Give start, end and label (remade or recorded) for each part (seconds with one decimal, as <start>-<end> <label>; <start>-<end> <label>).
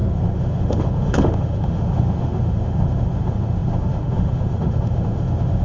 0.0-5.6 remade